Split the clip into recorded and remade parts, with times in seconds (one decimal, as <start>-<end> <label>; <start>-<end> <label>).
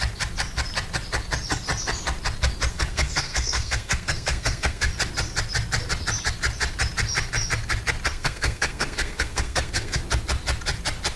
0.0-2.7 recorded; 2.7-4.9 remade; 4.9-8.1 recorded; 8.1-10.0 remade; 10.0-11.2 recorded